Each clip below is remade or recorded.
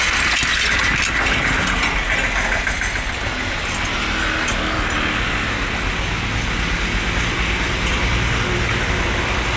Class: recorded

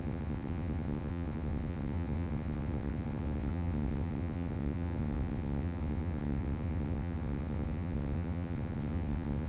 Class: remade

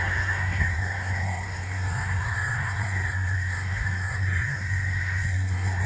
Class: remade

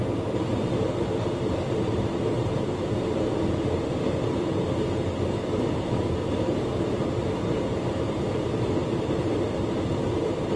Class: remade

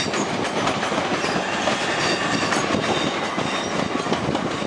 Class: recorded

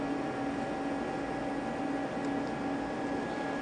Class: recorded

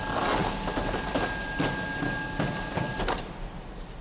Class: recorded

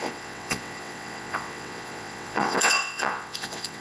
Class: remade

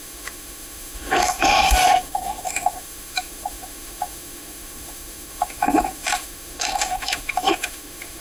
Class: remade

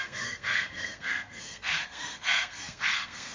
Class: remade